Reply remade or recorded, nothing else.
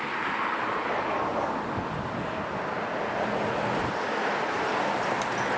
recorded